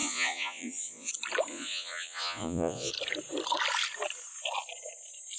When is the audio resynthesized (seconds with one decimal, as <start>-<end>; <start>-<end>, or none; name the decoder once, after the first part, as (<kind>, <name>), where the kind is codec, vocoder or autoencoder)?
0.0-1.1 (vocoder, Vocos); 1.5-2.9